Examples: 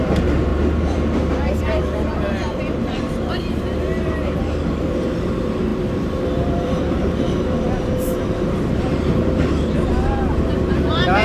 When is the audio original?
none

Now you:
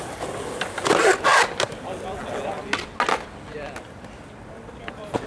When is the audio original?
1.3-4.5

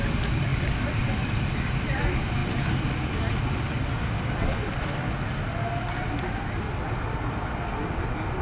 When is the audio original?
0.0-0.5; 2.0-8.4

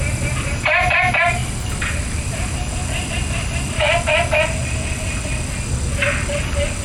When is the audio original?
0.0-1.4; 2.3-6.8